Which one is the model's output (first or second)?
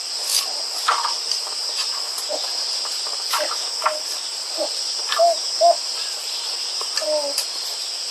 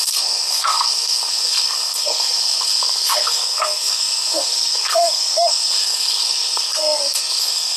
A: second